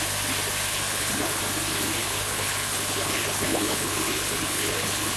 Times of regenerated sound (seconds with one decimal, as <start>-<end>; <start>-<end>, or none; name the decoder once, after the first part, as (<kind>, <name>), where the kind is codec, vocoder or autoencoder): 0.7-1.4 (codec, HILCodec); 2.0-5.2

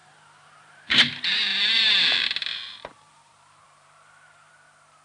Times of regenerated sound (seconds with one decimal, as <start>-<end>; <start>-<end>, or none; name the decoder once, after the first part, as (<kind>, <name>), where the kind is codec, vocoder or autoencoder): 0.0-1.1 (vocoder, BigVGAN v2); 1.5-4.5